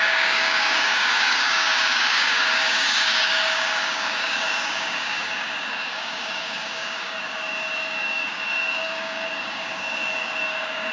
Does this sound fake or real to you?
fake